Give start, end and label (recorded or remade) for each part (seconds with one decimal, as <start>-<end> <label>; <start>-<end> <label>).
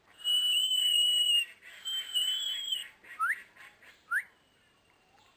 0.0-5.4 remade